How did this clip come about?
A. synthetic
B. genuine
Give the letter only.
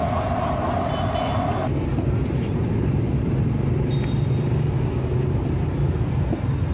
B